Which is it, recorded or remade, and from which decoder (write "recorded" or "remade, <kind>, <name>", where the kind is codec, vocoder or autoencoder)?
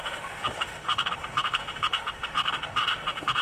remade, autoencoder, DAC-VAE